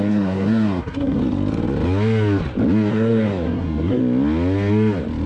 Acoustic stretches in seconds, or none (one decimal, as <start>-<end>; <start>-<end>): 1.2-2.9; 4.0-5.3